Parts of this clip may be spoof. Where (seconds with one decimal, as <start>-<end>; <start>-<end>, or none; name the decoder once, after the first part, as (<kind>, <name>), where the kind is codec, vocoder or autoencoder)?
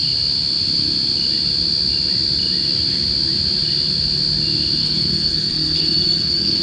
4.8-6.6 (codec, SNAC)